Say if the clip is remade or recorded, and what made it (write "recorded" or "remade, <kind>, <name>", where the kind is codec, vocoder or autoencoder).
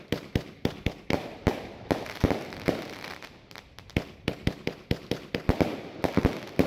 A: recorded